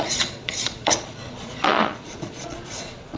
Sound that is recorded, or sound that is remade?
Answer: remade